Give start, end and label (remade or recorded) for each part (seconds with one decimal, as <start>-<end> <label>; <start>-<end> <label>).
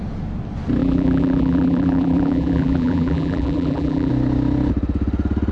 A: 0.0-0.8 recorded; 0.8-4.1 remade; 4.1-5.5 recorded